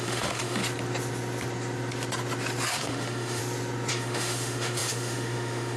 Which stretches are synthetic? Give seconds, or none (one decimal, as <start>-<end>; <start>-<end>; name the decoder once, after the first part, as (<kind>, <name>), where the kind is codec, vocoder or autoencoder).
0.0-0.6 (autoencoder, DAC-VAE); 2.7-3.4; 3.9-5.8